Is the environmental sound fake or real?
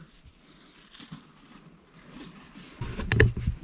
real